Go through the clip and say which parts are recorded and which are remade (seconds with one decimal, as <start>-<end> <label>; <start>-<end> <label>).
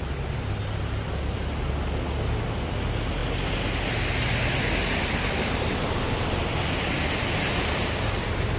0.0-8.6 recorded